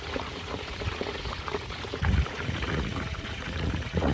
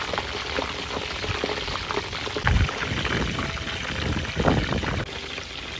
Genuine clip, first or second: second